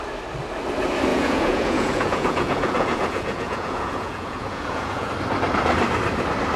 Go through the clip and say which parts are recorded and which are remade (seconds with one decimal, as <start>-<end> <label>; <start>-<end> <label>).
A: 0.0-1.1 recorded; 1.1-5.1 remade; 5.1-6.6 recorded